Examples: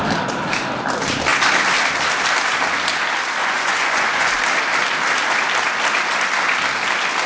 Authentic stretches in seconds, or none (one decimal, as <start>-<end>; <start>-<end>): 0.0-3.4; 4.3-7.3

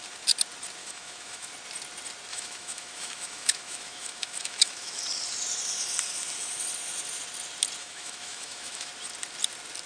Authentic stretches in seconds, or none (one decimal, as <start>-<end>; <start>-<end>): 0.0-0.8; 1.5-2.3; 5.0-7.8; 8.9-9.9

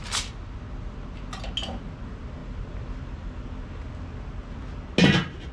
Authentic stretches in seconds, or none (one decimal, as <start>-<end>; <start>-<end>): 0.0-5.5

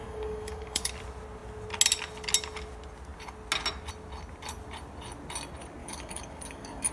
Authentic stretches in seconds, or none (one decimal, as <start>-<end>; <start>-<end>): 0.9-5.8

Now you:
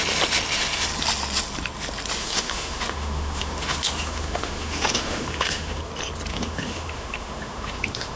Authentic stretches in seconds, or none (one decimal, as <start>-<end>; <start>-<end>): 0.0-2.2; 5.8-6.3